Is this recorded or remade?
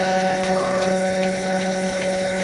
remade